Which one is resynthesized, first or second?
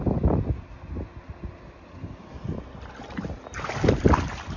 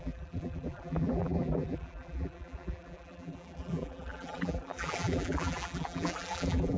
second